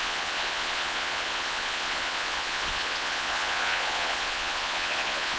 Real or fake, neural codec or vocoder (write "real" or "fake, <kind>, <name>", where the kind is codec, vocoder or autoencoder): fake, vocoder, Vocos